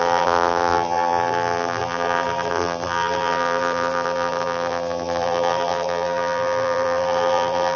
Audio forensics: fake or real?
fake